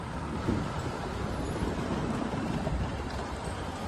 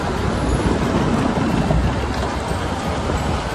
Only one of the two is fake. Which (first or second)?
first